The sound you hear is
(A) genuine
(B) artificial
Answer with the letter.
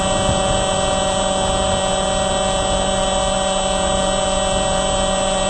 A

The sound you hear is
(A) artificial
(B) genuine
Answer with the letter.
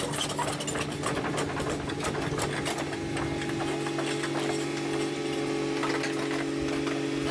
B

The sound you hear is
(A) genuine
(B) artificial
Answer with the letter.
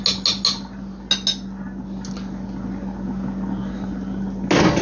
A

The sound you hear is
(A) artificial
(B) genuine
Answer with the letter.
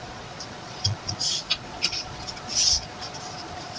A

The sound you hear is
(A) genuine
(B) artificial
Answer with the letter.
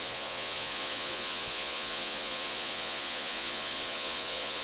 B